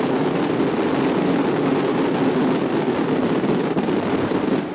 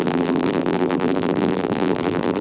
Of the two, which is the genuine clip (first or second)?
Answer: first